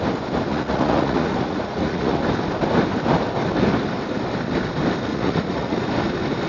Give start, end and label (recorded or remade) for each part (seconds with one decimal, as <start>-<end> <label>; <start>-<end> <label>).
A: 0.0-0.5 recorded; 0.5-2.2 remade; 2.2-5.1 recorded; 5.1-5.9 remade; 5.9-6.5 recorded